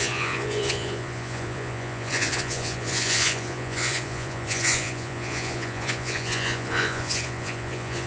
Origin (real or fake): fake